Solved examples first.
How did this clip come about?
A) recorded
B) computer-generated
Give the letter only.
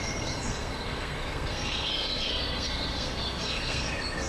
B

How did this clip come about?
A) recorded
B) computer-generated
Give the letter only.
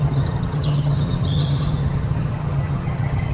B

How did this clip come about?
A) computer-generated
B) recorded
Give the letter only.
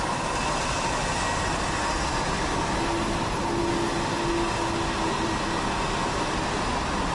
B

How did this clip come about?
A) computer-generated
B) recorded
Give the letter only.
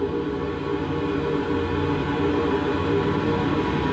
B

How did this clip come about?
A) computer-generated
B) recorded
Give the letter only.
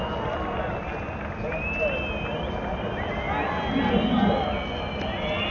B